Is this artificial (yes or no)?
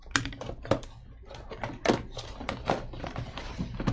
no